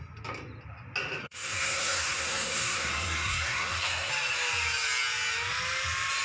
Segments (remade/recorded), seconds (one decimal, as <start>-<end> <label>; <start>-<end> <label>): 0.0-1.2 recorded; 1.2-4.1 remade; 4.1-6.2 recorded